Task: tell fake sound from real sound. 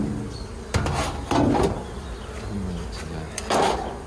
real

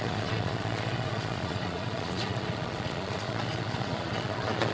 fake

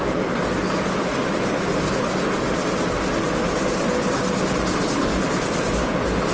real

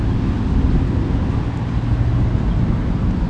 real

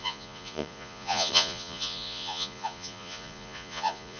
fake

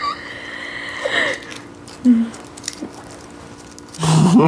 real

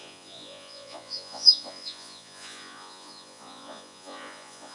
fake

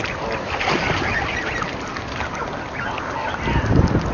real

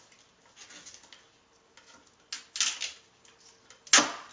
real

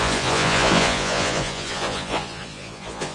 fake